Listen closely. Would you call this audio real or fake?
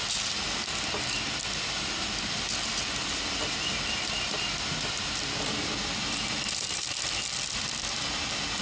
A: real